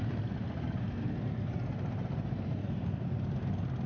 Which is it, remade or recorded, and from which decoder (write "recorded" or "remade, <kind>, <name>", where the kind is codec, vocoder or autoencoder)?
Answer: recorded